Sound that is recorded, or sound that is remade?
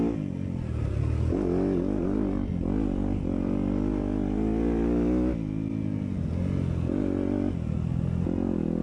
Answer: recorded